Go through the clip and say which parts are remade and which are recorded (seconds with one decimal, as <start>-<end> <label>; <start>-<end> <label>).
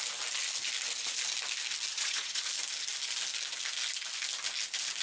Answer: 0.0-1.9 recorded; 1.9-2.4 remade; 2.4-5.0 recorded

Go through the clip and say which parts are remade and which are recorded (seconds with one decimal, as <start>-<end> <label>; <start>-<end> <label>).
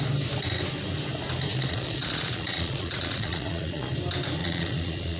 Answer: 0.0-1.5 recorded; 1.5-3.9 remade; 3.9-4.4 recorded; 4.4-5.2 remade